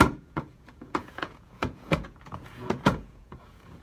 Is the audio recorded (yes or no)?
no